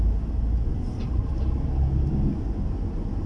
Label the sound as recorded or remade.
recorded